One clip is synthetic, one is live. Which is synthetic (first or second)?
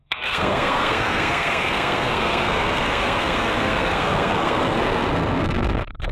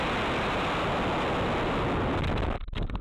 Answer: first